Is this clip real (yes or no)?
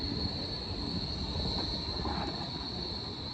yes